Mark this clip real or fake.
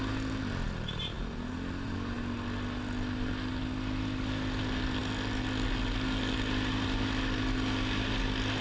real